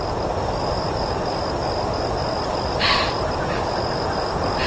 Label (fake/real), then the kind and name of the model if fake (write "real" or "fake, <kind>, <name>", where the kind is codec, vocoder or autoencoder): real